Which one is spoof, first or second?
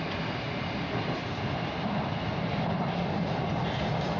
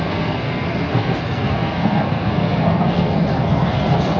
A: second